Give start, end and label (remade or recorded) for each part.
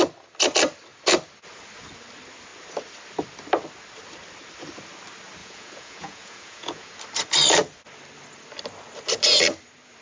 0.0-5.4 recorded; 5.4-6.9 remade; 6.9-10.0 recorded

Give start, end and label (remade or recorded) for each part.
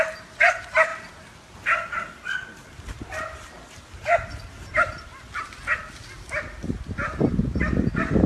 0.0-8.3 recorded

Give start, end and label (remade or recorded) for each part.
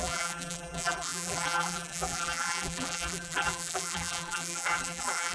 0.0-5.3 remade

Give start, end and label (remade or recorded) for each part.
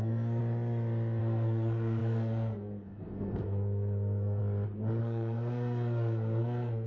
0.0-0.4 remade; 0.4-1.2 recorded; 1.2-4.4 remade; 4.4-5.0 recorded; 5.0-6.9 remade